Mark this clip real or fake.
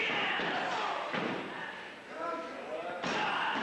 real